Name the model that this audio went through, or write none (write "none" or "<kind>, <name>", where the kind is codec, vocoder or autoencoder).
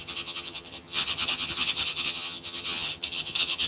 vocoder, HiFi-GAN